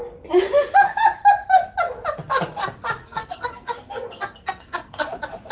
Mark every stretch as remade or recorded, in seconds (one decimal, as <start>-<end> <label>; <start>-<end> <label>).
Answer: 0.0-3.0 recorded; 3.0-5.1 remade; 5.1-5.5 recorded

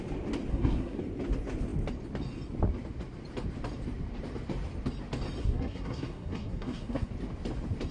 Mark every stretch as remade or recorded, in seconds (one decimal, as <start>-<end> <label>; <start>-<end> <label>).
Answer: 0.0-0.5 recorded; 0.5-1.0 remade; 1.0-5.4 recorded; 5.4-7.1 remade; 7.1-7.9 recorded